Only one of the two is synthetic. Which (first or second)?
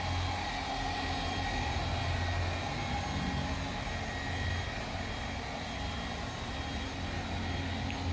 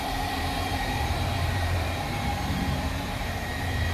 second